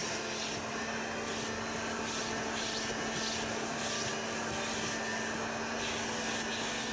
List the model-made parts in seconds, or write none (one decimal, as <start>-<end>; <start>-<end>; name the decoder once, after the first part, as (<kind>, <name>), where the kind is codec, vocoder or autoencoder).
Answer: none